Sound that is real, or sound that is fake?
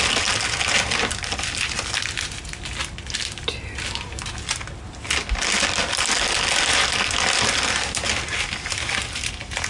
real